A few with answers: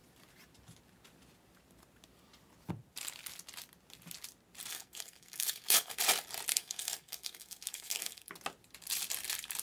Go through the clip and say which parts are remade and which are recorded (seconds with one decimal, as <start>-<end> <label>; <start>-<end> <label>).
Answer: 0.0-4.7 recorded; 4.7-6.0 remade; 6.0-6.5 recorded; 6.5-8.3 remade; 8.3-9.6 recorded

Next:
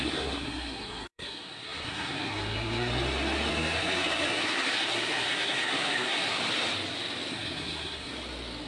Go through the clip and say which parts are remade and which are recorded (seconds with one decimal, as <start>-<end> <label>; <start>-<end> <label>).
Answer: 0.0-2.9 remade; 2.9-3.5 recorded; 3.5-6.4 remade; 6.4-7.3 recorded; 7.3-8.1 remade; 8.1-8.7 recorded

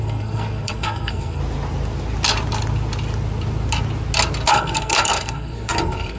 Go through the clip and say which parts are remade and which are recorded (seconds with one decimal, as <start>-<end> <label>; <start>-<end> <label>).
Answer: 0.0-1.4 remade; 1.4-4.5 recorded; 4.5-6.2 remade

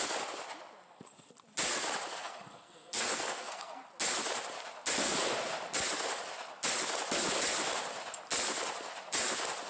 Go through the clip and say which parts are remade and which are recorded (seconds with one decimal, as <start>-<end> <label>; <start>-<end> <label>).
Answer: 0.0-2.2 recorded; 2.2-3.8 remade; 3.8-9.7 recorded

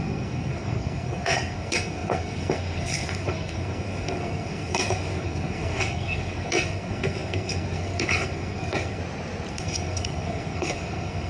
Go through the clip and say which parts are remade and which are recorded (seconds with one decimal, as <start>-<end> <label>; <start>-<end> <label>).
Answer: 0.0-9.0 remade; 9.0-9.5 recorded; 9.5-11.3 remade